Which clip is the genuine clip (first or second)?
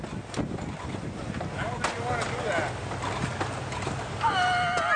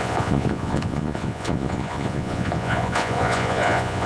first